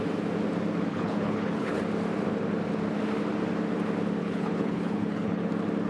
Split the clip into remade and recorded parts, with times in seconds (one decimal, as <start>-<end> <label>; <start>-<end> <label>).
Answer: 0.0-0.9 recorded; 0.9-1.8 remade; 1.8-4.2 recorded; 4.2-5.5 remade; 5.5-5.9 recorded